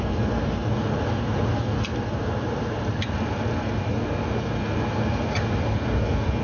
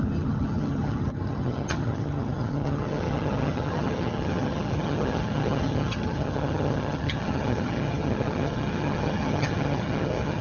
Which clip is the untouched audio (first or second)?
first